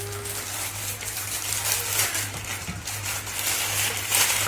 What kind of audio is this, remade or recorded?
remade